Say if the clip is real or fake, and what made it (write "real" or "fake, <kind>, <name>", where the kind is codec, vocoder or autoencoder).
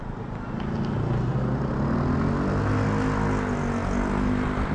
real